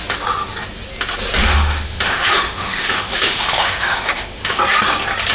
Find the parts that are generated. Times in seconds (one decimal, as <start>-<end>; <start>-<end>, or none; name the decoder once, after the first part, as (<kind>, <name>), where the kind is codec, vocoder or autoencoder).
1.4-4.6 (autoencoder, DAC-VAE)